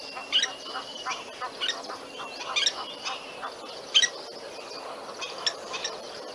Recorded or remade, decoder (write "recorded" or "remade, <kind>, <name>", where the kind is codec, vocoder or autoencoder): recorded